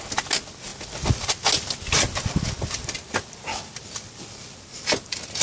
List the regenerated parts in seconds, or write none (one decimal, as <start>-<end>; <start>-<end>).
none